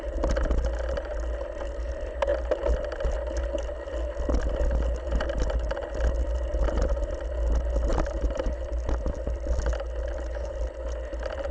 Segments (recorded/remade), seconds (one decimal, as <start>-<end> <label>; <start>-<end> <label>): 0.0-11.5 recorded